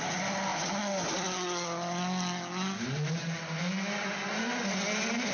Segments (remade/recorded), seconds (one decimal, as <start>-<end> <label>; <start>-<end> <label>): 0.0-5.3 recorded

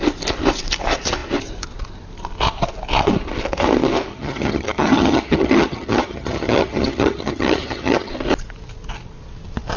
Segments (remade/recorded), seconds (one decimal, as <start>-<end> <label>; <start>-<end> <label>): 0.0-4.1 recorded; 4.1-8.1 remade; 8.1-9.8 recorded

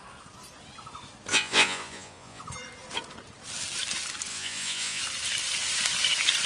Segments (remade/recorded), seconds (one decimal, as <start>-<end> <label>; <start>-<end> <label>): 0.0-1.3 recorded; 1.3-2.4 remade; 2.4-4.3 recorded; 4.3-5.0 remade; 5.0-6.5 recorded